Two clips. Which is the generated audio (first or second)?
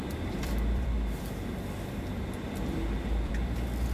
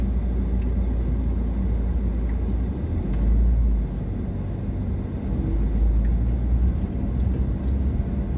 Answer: first